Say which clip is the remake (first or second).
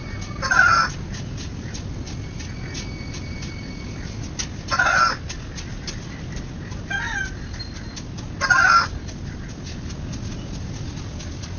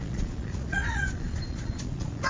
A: second